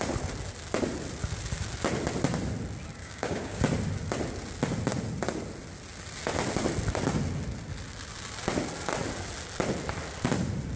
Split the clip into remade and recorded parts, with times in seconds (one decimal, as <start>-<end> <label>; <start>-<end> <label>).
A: 0.0-3.0 recorded; 3.0-3.6 remade; 3.6-10.8 recorded